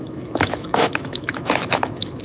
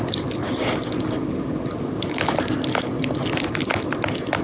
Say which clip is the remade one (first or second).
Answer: first